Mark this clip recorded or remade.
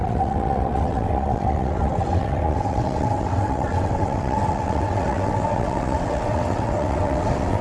remade